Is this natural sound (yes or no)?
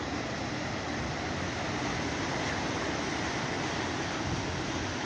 yes